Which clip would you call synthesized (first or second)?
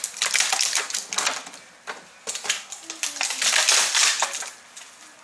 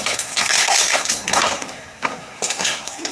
second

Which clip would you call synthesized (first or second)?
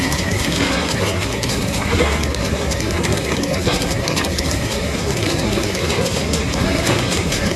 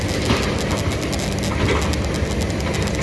first